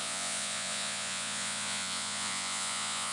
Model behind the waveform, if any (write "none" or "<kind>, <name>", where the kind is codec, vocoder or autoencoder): vocoder, Vocos